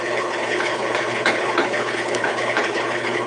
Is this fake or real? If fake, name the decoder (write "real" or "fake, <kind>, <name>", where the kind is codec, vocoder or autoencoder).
fake, codec, HILCodec